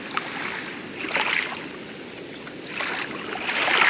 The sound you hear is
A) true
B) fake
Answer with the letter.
B